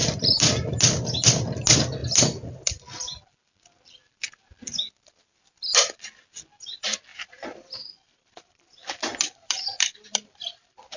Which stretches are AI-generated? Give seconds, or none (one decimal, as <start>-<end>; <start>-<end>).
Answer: 7.1-11.0